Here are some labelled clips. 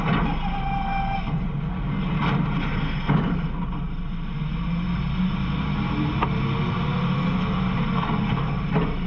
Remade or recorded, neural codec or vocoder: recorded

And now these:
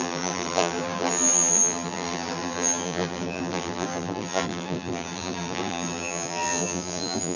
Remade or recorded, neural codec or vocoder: remade, vocoder, BigVGAN v2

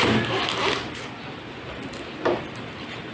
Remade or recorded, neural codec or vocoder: recorded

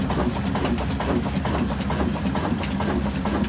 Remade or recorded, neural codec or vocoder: recorded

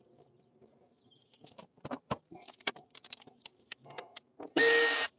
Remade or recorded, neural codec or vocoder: remade, vocoder, BigVGAN v2